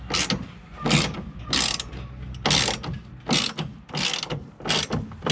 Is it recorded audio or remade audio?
recorded